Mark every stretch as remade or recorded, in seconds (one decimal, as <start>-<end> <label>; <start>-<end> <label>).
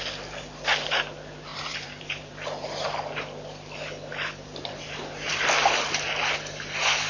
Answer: 0.0-1.5 recorded; 1.5-2.3 remade; 2.3-4.1 recorded; 4.1-5.0 remade; 5.0-7.1 recorded